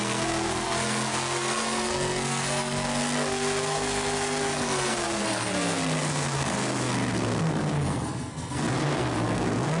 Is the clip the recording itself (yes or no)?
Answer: no